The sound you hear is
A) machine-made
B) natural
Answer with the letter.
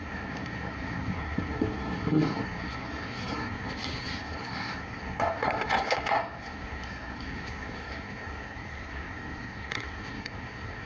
A